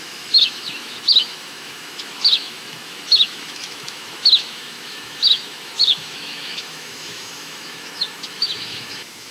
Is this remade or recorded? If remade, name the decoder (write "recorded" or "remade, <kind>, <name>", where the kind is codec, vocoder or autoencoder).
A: remade, autoencoder, DAC-VAE